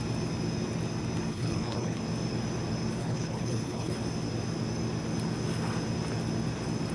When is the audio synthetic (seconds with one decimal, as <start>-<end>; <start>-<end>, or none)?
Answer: 1.3-2.0; 3.0-4.0